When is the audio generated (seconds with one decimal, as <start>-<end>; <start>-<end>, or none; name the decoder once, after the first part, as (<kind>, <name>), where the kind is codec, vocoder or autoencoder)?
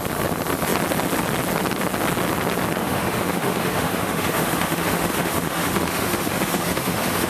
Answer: 2.8-7.3 (autoencoder, DAC-VAE)